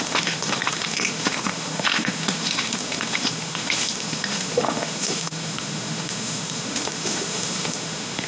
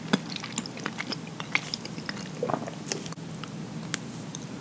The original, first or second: second